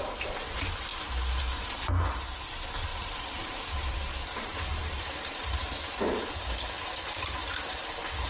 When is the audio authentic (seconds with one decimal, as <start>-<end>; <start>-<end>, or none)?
0.0-2.9; 4.1-4.7; 5.6-8.3